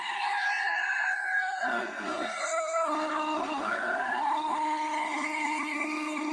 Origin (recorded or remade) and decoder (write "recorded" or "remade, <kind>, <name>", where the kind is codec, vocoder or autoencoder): remade, codec, SNAC